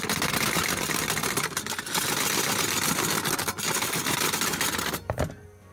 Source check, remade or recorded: recorded